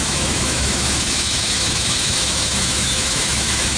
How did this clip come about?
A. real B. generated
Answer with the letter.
B